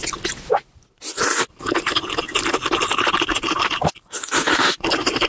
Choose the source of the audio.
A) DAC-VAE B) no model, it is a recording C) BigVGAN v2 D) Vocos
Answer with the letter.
B